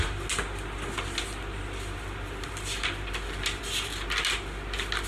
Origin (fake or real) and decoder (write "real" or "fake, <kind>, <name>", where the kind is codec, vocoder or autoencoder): real